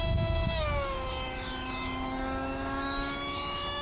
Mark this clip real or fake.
fake